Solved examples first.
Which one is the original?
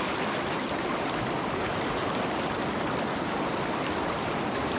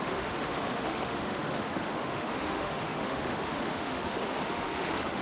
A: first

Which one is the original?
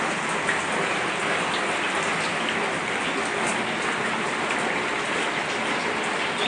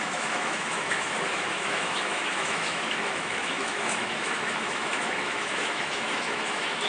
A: first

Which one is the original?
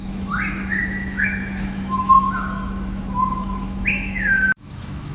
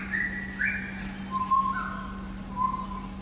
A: second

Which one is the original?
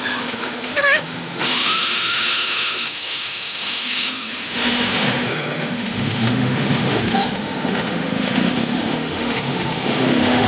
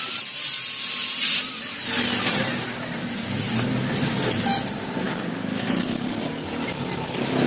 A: second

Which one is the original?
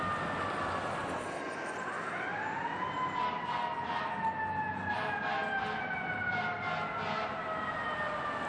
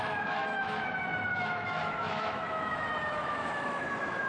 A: first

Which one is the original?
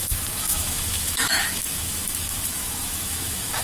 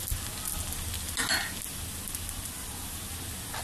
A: second